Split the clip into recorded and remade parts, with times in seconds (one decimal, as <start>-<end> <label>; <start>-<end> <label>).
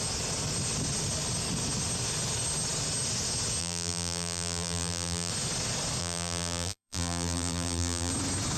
0.0-3.6 recorded; 3.6-5.3 remade; 5.3-6.0 recorded; 6.0-8.1 remade; 8.1-8.6 recorded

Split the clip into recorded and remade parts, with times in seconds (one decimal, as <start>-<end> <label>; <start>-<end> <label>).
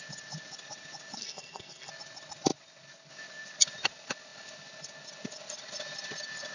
0.0-1.2 recorded; 1.2-1.9 remade; 1.9-6.5 recorded